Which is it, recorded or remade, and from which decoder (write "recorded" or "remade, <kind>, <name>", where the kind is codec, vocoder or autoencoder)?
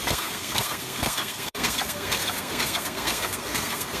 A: remade, codec, SNAC